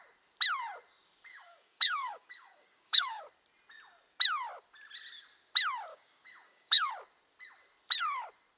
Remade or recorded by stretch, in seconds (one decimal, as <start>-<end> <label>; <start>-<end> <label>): 0.0-1.3 recorded; 1.3-3.2 remade; 3.2-5.9 recorded; 5.9-6.9 remade; 6.9-8.6 recorded